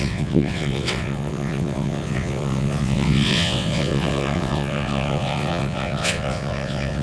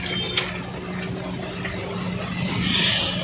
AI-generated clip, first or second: first